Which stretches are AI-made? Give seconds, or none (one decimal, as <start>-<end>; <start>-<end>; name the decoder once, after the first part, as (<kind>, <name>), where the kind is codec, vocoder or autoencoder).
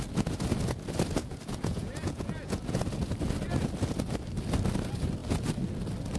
1.2-2.8 (vocoder, Vocos)